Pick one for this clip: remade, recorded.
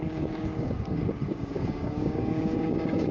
remade